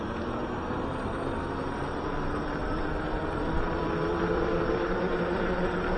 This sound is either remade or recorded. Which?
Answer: remade